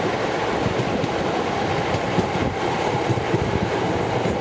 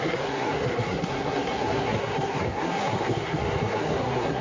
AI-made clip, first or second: second